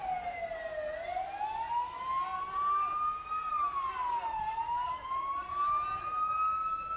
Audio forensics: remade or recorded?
recorded